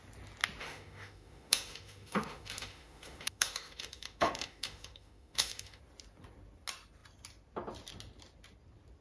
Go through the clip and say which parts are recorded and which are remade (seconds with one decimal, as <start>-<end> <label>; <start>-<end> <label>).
0.0-0.6 recorded; 0.6-5.8 remade; 5.8-9.0 recorded

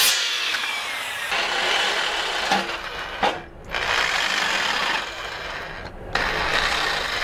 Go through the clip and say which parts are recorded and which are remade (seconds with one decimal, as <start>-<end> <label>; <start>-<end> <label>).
0.0-7.2 recorded